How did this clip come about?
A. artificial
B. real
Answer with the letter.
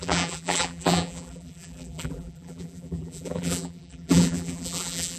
A